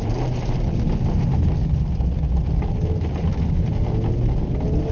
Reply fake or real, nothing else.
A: real